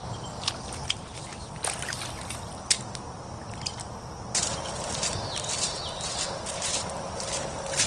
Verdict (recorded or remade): recorded